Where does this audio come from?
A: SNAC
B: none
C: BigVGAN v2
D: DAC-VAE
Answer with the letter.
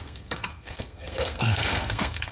A